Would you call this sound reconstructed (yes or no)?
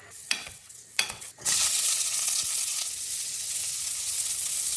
yes